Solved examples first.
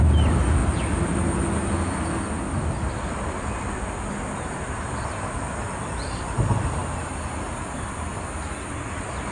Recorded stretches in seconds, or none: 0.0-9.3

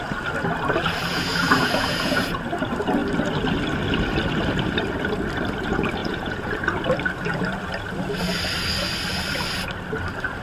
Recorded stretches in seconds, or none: 0.0-1.1; 2.4-6.0; 6.5-10.4

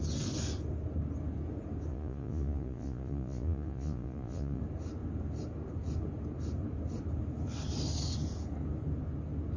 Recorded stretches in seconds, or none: 0.0-1.9; 4.6-9.6

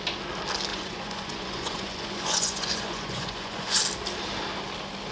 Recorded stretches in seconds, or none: 0.0-0.7; 3.8-5.1

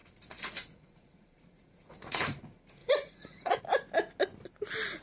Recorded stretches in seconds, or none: 2.4-2.8; 3.6-5.0

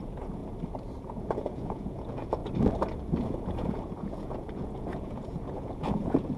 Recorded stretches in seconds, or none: 0.4-1.0; 2.4-3.2

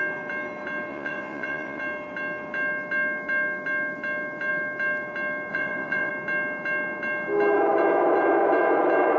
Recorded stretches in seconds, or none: 0.0-0.9; 1.8-5.5; 6.1-9.2